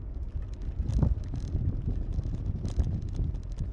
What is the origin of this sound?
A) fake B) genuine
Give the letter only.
B